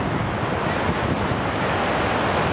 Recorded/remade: recorded